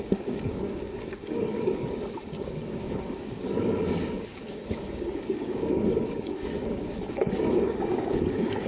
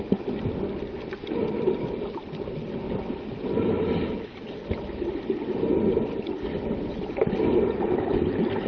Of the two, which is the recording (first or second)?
second